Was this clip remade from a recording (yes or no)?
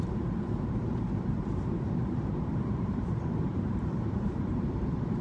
yes